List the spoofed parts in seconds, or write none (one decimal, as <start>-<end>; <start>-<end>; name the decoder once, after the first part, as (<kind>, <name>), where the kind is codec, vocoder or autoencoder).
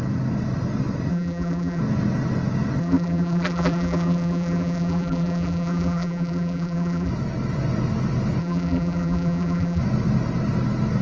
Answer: 1.1-1.8 (vocoder, BigVGAN v2); 2.8-7.1; 8.4-9.8